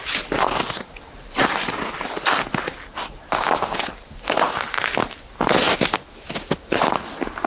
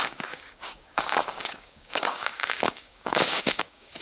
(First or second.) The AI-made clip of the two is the second